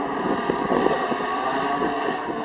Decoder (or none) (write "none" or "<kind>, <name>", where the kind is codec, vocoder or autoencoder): none